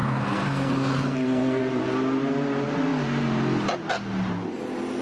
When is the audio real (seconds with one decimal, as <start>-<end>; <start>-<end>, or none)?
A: 1.6-5.0